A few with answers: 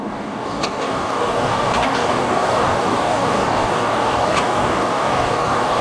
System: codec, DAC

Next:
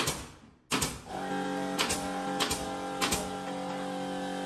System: none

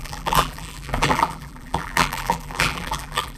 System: vocoder, BigVGAN v2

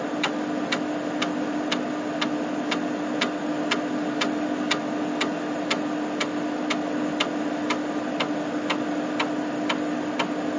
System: none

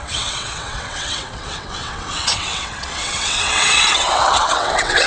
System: vocoder, WaveNeXt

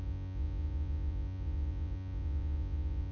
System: vocoder, Vocos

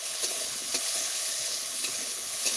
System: codec, HILCodec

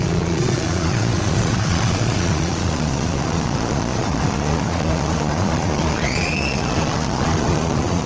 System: vocoder, Vocos